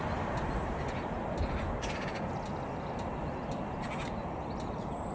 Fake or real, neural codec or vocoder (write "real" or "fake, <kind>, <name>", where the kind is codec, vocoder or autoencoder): real